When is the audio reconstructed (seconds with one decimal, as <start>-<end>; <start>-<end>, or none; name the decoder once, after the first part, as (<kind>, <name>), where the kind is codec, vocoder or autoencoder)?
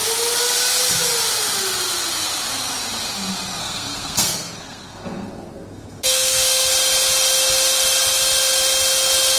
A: 3.6-6.7 (codec, SNAC)